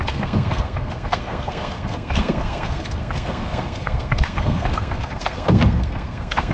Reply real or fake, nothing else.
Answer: fake